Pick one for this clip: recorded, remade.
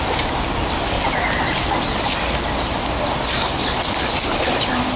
recorded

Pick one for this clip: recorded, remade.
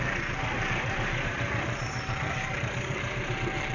remade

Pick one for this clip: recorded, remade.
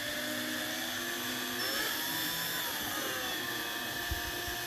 recorded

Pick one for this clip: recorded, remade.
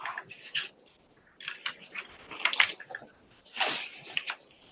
remade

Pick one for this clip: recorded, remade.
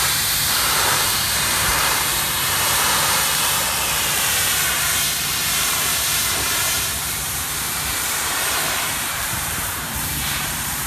remade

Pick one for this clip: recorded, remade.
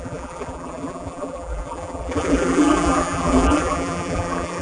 remade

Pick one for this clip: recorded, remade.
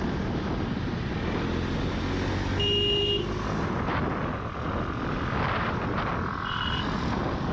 recorded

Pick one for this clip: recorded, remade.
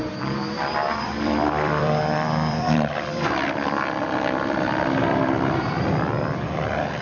remade